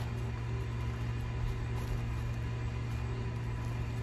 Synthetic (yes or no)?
no